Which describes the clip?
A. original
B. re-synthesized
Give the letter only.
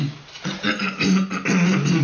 A